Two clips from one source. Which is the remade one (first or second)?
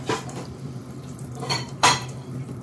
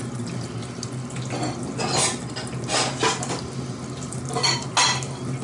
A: first